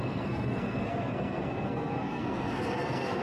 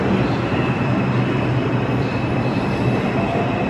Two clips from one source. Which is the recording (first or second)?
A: second